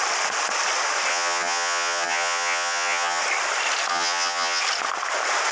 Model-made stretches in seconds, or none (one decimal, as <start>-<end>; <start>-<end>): 1.1-3.2; 3.9-4.6